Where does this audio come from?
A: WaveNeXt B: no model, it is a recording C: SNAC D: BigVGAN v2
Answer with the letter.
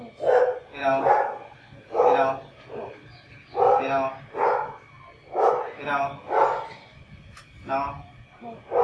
B